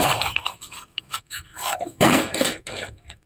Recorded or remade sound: remade